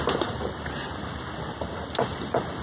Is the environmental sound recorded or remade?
recorded